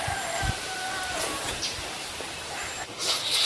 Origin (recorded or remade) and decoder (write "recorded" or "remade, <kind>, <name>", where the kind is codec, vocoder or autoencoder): remade, vocoder, BigVGAN v2